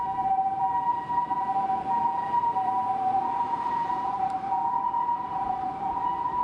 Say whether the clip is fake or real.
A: fake